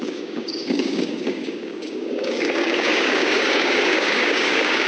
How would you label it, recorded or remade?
remade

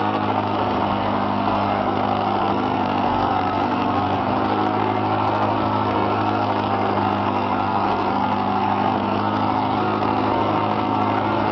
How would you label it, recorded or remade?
remade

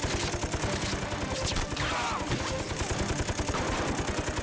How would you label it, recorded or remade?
recorded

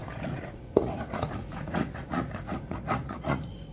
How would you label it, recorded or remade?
remade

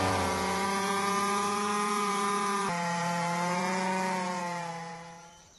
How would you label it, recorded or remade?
remade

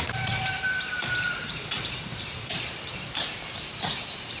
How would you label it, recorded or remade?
remade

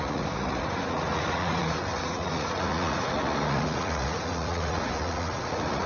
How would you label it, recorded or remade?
remade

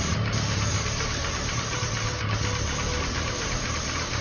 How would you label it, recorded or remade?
recorded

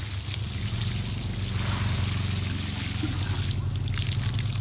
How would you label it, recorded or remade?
recorded